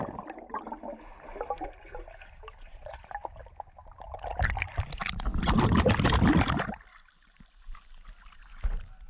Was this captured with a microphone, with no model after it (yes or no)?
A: yes